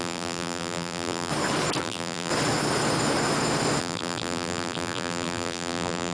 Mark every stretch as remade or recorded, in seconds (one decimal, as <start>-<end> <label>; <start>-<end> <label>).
0.0-1.3 remade; 1.3-1.8 recorded; 1.8-2.3 remade; 2.3-3.8 recorded; 3.8-6.1 remade